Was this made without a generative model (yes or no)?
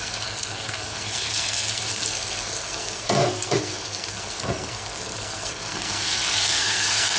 no